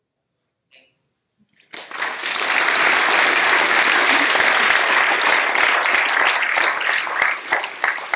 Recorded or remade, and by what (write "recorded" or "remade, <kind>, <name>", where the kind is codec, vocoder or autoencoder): recorded